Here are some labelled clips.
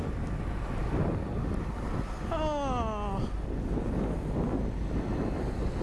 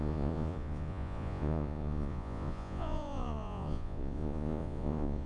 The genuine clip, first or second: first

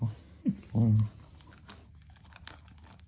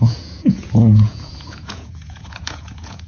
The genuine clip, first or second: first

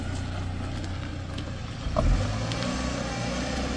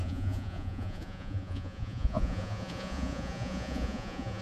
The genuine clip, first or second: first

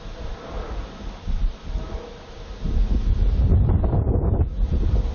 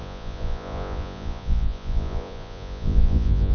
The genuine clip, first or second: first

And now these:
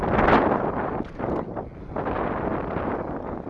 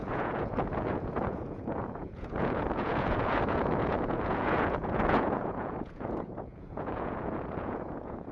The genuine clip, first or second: first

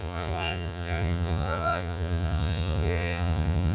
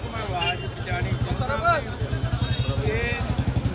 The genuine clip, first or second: second